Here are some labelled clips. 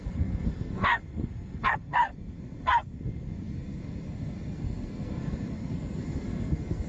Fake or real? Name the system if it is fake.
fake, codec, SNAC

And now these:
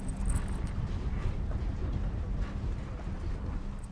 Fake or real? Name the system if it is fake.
real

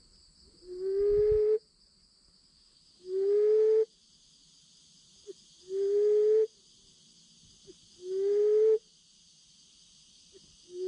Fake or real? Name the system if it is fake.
real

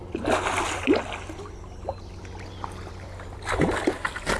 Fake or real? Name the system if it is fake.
real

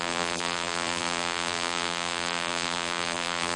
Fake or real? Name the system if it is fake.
fake, vocoder, BigVGAN v2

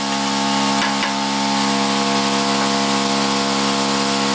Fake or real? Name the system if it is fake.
real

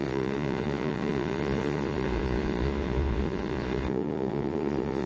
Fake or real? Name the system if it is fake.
fake, vocoder, Vocos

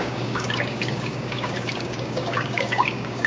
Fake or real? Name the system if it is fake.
fake, codec, DAC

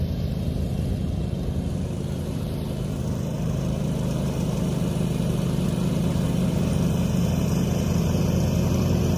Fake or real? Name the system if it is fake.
fake, vocoder, BigVGAN v2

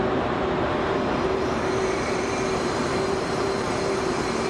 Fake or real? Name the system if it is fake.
fake, vocoder, BigVGAN v2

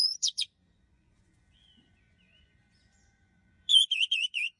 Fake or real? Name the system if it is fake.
fake, vocoder, Vocos